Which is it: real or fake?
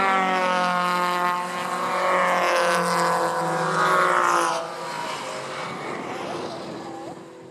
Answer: real